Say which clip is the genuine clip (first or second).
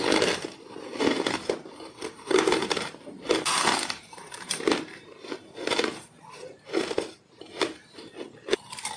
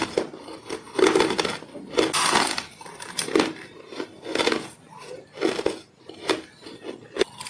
second